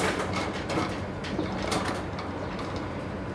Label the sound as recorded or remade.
recorded